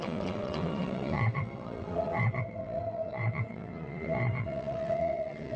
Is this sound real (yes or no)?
no